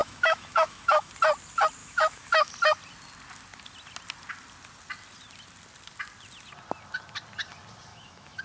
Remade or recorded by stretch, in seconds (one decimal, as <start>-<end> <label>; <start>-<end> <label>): 0.0-1.1 remade; 1.1-1.8 recorded; 1.8-2.5 remade; 2.5-7.9 recorded; 7.9-8.4 remade